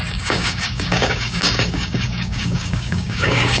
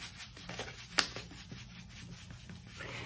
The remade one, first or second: first